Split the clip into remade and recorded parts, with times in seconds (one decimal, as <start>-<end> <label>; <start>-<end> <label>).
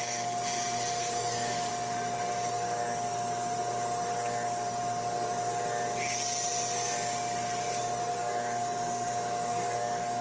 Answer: 0.0-1.0 recorded; 1.0-1.7 remade; 1.7-8.1 recorded; 8.1-10.2 remade